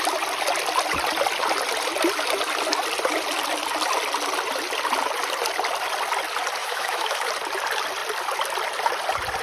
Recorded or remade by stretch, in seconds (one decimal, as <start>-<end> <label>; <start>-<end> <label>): 0.0-6.6 recorded; 6.6-7.3 remade; 7.3-9.4 recorded